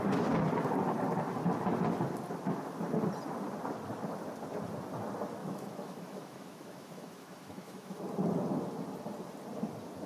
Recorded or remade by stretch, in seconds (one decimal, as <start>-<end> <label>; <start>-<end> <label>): 0.0-5.4 recorded; 5.4-8.0 remade; 8.0-10.1 recorded